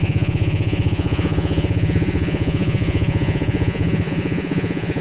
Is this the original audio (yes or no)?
no